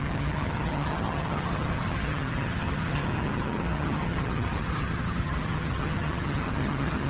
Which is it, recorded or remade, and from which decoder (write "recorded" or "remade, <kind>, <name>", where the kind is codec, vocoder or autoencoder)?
remade, vocoder, HiFi-GAN